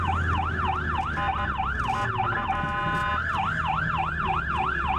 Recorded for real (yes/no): yes